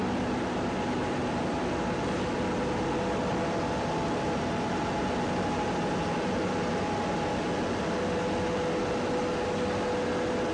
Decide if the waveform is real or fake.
real